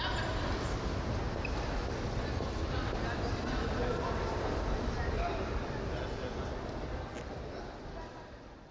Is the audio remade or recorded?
recorded